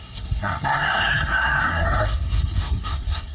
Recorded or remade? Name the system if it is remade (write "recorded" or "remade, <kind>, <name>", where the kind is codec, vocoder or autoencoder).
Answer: remade, codec, SNAC